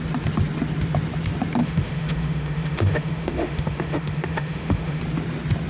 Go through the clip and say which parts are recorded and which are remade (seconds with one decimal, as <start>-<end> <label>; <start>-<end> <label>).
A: 0.0-1.6 recorded; 1.6-5.0 remade; 5.0-5.7 recorded